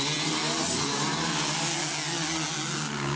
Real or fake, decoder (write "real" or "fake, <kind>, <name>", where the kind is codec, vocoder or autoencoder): real